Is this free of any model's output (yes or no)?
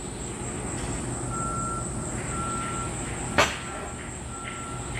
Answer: yes